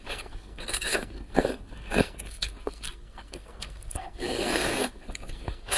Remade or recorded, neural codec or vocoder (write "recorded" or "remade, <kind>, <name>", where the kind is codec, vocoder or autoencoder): remade, codec, SNAC